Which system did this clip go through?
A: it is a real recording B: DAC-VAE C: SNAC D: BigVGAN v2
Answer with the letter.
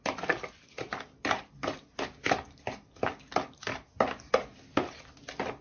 A